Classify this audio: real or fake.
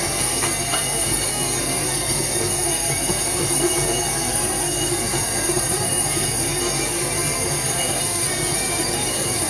fake